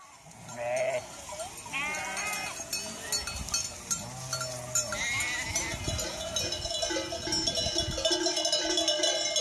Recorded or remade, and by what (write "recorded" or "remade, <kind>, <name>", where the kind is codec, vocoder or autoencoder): recorded